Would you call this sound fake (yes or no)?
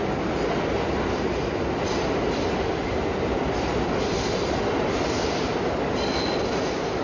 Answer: no